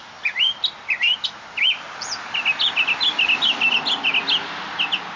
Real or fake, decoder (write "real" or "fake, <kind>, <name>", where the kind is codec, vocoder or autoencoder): real